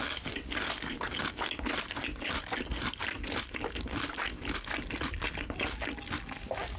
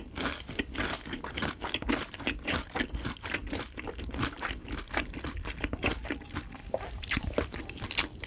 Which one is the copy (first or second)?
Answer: second